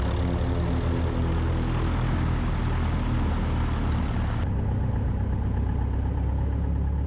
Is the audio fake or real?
real